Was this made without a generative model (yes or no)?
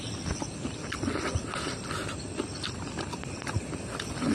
yes